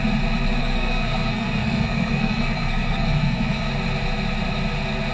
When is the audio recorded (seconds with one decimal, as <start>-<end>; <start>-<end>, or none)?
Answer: 0.0-0.6; 3.7-5.1